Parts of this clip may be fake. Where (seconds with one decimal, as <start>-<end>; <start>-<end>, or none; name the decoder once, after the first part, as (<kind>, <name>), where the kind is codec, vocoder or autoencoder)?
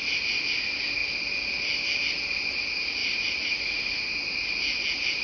3.0-3.8 (vocoder, Vocos)